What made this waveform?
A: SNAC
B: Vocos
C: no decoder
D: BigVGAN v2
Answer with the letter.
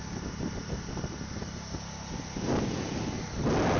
C